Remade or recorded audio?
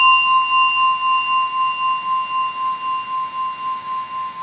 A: recorded